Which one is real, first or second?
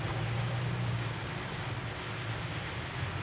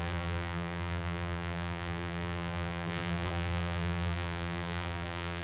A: first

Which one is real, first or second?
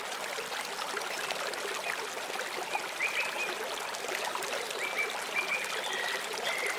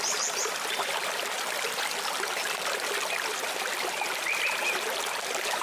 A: first